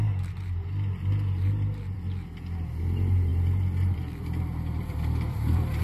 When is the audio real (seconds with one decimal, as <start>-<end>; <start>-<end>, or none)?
0.0-3.3